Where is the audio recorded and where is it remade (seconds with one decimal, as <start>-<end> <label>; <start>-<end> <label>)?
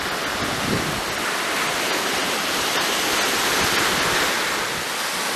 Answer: 0.0-2.2 recorded; 2.2-3.0 remade; 3.0-5.4 recorded